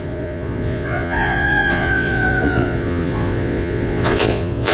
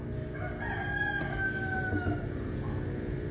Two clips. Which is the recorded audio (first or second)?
second